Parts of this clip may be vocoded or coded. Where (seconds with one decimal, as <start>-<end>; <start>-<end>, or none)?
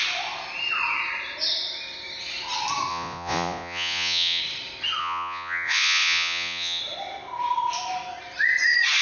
2.9-4.4; 5.0-6.8